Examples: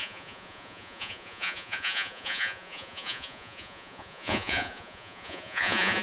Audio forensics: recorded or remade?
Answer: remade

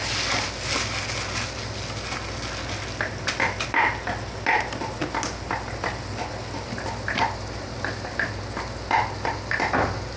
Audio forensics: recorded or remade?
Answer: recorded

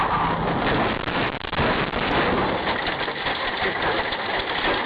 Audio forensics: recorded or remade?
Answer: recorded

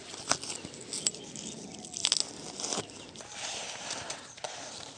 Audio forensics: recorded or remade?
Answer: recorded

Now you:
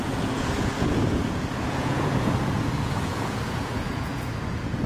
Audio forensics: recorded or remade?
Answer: remade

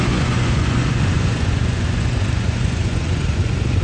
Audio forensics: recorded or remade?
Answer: remade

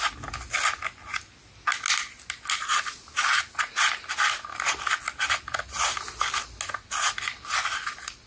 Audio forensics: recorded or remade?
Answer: recorded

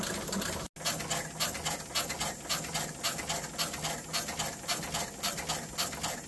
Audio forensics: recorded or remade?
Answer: recorded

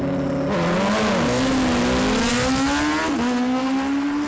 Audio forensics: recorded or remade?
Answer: recorded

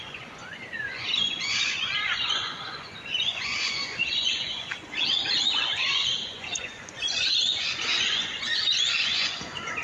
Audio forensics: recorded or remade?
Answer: remade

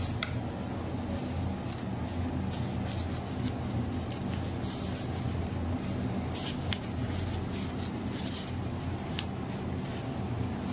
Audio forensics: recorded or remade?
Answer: recorded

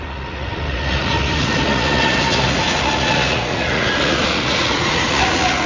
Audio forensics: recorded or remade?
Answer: remade